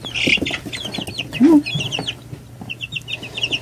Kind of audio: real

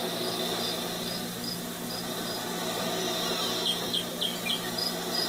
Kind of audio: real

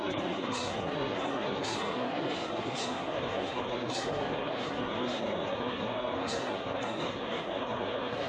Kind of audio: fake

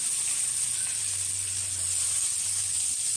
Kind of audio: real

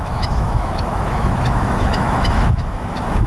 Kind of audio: fake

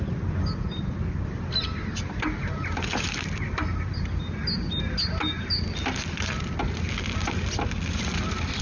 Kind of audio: real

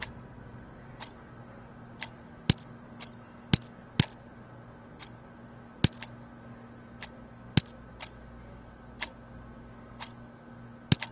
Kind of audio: real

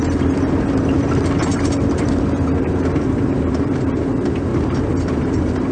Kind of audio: fake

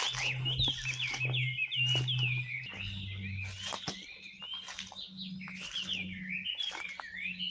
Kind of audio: real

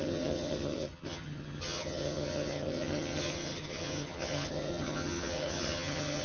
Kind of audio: fake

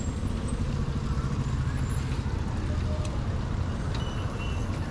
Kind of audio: real